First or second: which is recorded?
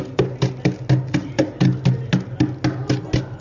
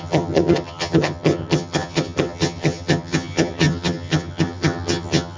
first